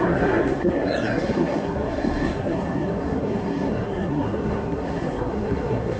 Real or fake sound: fake